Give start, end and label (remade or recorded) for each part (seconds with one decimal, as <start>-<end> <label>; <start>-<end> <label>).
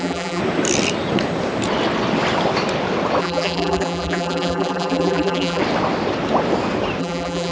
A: 0.0-0.4 remade; 0.4-3.2 recorded; 3.2-5.6 remade; 5.6-7.0 recorded; 7.0-7.5 remade